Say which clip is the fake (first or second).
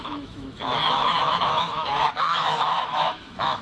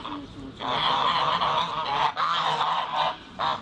first